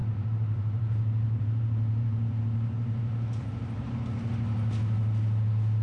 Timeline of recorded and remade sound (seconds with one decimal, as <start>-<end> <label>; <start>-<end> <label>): 0.0-3.5 remade; 3.5-5.8 recorded